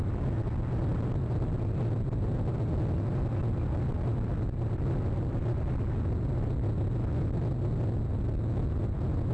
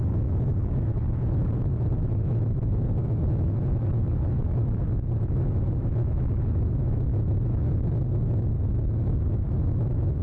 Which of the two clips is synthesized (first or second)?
second